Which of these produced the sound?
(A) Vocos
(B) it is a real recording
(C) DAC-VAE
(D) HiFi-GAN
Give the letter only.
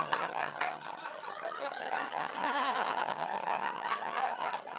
D